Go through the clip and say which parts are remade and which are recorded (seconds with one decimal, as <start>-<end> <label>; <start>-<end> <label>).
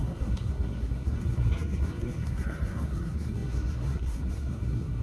0.0-5.0 remade